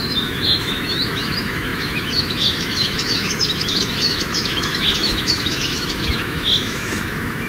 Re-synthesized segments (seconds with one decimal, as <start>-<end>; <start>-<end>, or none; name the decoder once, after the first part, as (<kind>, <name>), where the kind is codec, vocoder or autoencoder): 0.0-7.5 (autoencoder, DAC-VAE)